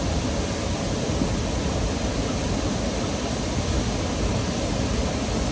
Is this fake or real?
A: real